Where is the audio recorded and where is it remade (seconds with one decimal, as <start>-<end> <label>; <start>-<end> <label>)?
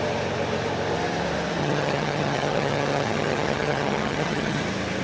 0.0-1.6 recorded; 1.6-4.6 remade; 4.6-5.0 recorded